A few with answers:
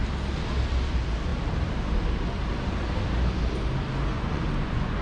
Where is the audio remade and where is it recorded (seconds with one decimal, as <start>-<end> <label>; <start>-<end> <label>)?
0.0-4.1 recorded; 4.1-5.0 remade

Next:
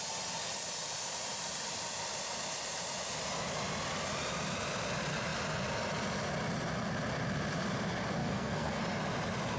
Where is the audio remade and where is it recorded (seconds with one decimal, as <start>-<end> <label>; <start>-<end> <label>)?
0.0-8.2 recorded; 8.2-8.8 remade; 8.8-9.6 recorded

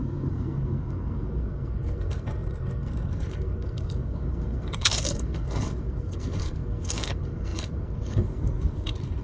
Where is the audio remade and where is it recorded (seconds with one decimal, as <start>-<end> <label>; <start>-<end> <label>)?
0.0-9.2 remade

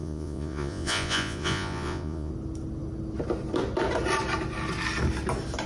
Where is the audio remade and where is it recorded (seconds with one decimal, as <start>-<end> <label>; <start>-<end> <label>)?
0.0-2.3 remade; 2.3-5.7 recorded